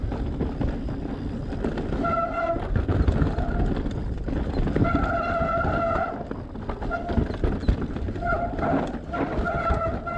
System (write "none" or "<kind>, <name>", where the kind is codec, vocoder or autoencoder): none